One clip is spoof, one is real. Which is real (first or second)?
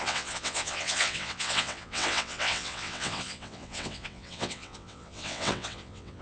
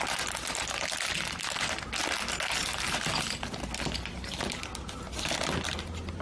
second